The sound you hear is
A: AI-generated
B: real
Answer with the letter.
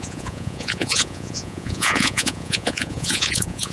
A